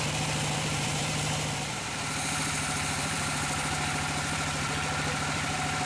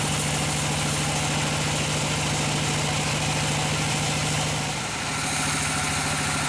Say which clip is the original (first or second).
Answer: second